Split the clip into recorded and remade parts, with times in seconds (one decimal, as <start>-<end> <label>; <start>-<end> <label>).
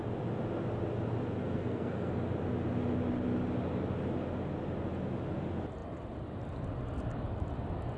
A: 0.0-1.4 recorded; 1.4-2.1 remade; 2.1-8.0 recorded